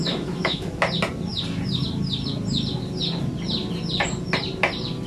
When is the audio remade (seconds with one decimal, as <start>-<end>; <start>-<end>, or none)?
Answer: 0.0-0.7